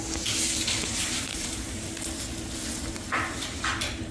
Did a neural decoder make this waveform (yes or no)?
no